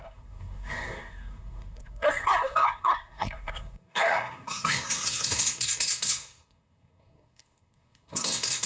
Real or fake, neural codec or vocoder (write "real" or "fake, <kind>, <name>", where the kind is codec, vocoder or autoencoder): fake, codec, SNAC